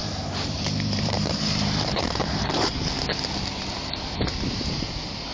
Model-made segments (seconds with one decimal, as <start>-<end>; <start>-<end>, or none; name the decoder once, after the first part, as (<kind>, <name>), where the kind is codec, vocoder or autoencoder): 0.0-2.9 (vocoder, BigVGAN v2)